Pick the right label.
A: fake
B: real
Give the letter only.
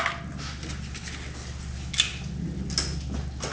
B